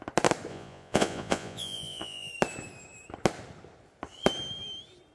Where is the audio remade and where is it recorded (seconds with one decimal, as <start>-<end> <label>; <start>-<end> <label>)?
0.0-0.5 recorded; 0.5-2.3 remade; 2.3-5.1 recorded